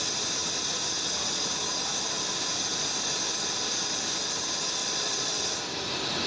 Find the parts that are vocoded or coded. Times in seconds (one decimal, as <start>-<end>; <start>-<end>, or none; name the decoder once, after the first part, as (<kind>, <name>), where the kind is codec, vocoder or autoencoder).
4.8-5.4 (vocoder, Vocos)